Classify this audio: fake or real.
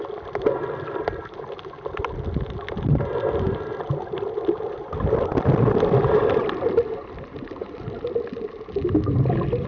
real